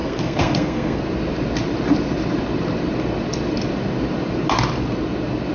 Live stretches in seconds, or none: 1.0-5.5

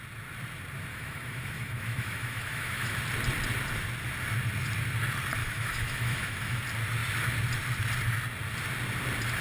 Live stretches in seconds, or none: 0.0-0.9; 3.0-5.4; 6.6-9.4

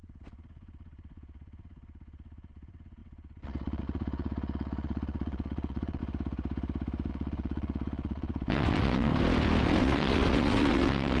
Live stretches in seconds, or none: 6.0-7.1; 9.1-9.8

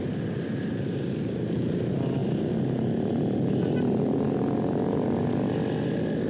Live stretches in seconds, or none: 0.0-6.3

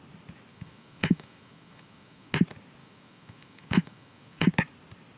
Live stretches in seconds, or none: 0.0-0.5; 2.3-2.8; 4.5-5.2

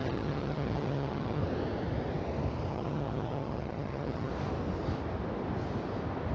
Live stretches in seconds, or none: 1.4-2.7; 4.3-6.3